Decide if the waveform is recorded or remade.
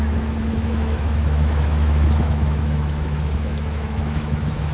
remade